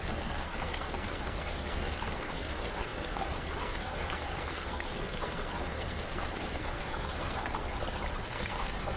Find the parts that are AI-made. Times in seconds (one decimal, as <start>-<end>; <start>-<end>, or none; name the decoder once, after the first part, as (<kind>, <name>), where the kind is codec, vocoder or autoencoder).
0.0-7.6 (codec, SNAC); 8.2-9.0